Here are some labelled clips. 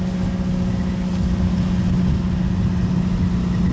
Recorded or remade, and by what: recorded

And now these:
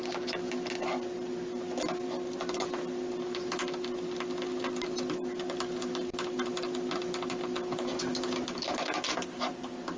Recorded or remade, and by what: recorded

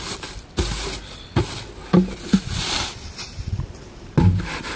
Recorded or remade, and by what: recorded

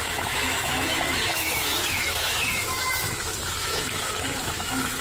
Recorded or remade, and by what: remade, autoencoder, DAC-VAE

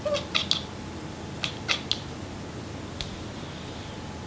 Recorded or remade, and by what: recorded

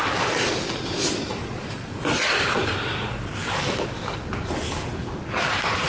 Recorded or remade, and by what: recorded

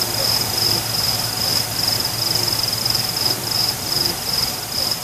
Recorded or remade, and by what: recorded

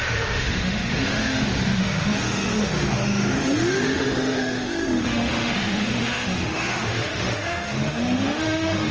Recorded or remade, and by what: remade, autoencoder, DAC-VAE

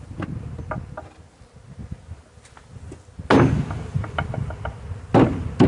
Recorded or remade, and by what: recorded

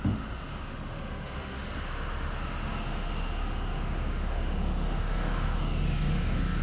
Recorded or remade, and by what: remade, autoencoder, DAC-VAE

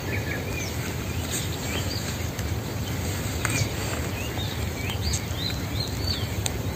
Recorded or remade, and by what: recorded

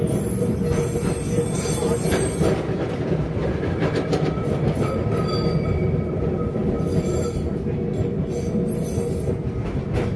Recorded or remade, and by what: recorded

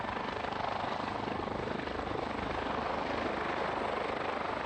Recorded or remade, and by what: recorded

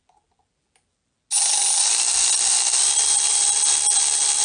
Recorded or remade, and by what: recorded